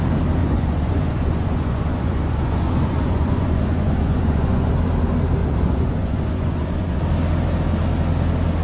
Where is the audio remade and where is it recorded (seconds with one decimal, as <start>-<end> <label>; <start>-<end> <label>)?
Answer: 0.0-0.4 recorded; 0.4-4.7 remade; 4.7-5.4 recorded; 5.4-7.0 remade; 7.0-8.6 recorded